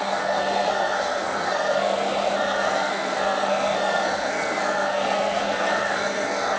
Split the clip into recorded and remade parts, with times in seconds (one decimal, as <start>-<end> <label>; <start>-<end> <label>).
0.0-6.6 remade